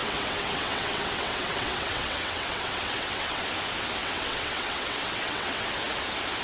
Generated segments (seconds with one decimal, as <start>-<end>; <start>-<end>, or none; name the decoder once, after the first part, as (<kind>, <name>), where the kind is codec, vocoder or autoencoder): 0.0-3.4 (vocoder, WaveNeXt); 4.0-5.6